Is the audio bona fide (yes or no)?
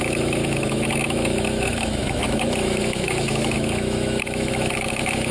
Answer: no